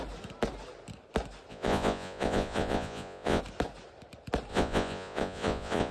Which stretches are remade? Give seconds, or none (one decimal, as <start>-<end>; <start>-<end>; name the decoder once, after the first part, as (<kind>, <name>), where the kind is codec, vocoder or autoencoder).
1.5-3.4 (vocoder, Vocos); 4.5-5.9